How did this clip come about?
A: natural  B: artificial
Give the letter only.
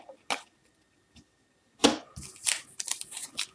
A